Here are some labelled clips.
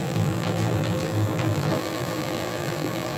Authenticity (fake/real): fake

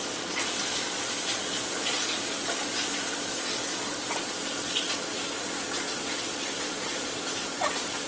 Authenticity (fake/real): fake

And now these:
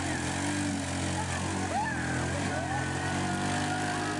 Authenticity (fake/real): real